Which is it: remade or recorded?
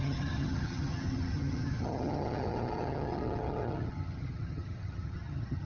remade